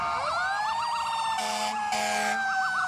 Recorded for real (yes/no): yes